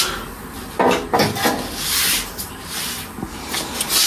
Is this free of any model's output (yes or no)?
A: yes